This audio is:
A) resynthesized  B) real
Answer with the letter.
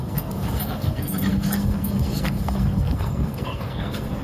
A